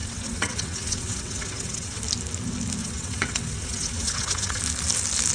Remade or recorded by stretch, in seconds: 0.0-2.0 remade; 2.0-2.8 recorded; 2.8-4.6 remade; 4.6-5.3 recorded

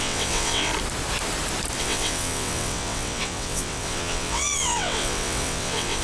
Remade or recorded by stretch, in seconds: 0.0-0.7 remade; 0.7-1.8 recorded; 1.8-6.0 remade

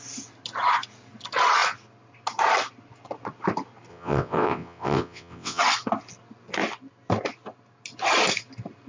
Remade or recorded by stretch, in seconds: 0.0-3.9 recorded; 3.9-5.6 remade; 5.6-8.9 recorded

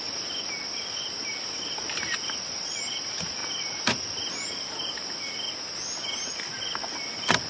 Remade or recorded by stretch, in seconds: 0.0-7.5 recorded

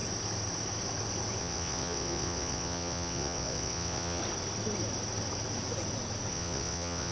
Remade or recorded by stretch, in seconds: 0.0-1.4 recorded; 1.4-4.2 remade; 4.2-6.3 recorded; 6.3-7.1 remade

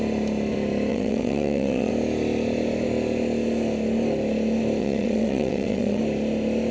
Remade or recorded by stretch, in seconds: 0.0-0.9 recorded; 0.9-1.9 remade; 1.9-4.8 recorded; 4.8-6.0 remade; 6.0-6.7 recorded